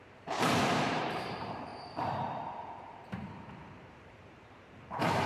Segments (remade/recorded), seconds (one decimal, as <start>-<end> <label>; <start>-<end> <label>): 0.0-5.3 remade